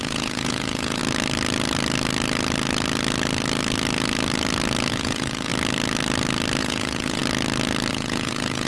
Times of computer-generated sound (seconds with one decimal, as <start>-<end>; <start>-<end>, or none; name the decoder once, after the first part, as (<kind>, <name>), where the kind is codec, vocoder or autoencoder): 0.0-1.0 (vocoder, Vocos); 4.9-5.5; 6.6-7.2; 7.9-8.7